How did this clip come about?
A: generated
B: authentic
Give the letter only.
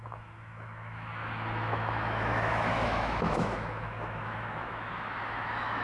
A